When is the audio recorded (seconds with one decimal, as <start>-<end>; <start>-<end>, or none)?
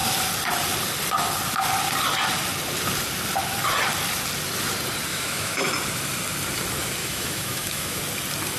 0.0-5.1; 5.7-7.0; 8.0-8.6